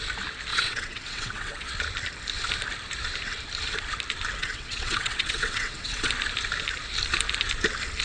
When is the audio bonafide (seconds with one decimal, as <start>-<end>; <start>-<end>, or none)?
0.0-0.5; 1.7-4.4; 6.1-8.0